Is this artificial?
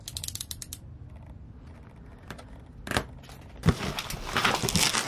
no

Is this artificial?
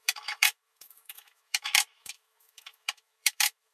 yes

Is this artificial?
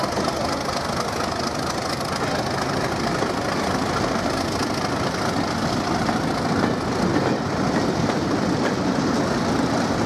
no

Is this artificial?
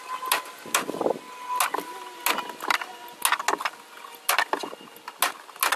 no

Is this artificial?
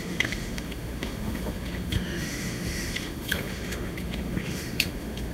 yes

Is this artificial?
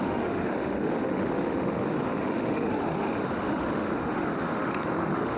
yes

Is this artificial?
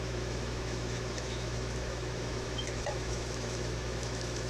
yes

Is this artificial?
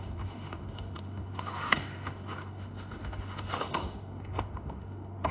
yes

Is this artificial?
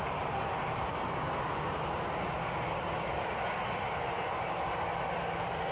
no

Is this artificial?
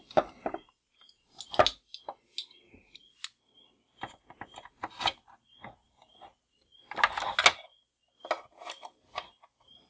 no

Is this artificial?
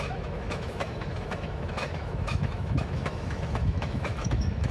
yes